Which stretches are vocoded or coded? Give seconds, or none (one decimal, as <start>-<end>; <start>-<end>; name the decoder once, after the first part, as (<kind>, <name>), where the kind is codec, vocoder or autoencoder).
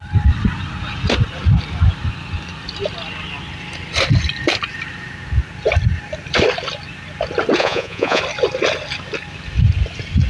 7.6-8.2 (vocoder, Vocos)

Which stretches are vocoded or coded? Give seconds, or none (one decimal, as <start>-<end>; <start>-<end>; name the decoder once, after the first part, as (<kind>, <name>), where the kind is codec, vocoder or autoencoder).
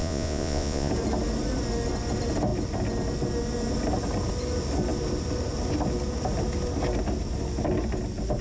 0.0-0.9 (vocoder, Vocos)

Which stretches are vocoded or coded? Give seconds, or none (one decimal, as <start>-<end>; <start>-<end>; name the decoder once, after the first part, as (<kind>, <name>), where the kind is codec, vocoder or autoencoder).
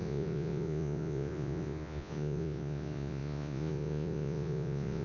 0.0-5.0 (vocoder, Vocos)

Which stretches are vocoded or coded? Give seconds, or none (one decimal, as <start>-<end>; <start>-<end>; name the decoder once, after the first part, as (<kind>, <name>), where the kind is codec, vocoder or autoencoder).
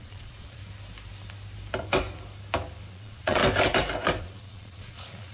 0.0-0.6 (vocoder, Vocos); 2.9-3.4; 4.2-5.3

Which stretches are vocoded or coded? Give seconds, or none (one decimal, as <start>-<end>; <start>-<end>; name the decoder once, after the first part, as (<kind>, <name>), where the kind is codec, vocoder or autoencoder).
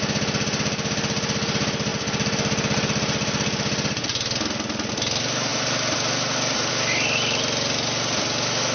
none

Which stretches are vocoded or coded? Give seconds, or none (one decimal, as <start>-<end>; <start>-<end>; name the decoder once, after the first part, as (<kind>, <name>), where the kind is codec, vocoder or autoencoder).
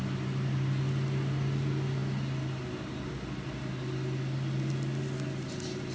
none